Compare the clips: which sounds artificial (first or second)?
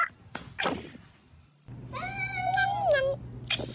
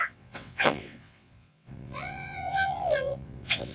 second